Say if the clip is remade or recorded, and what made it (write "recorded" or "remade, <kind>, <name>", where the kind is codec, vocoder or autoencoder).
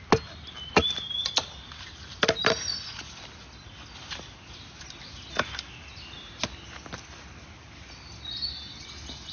recorded